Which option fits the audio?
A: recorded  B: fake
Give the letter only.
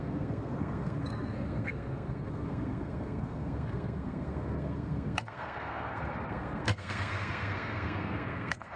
B